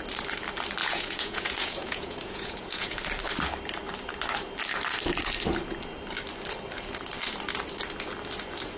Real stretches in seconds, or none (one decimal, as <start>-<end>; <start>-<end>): 0.0-0.8; 3.0-8.8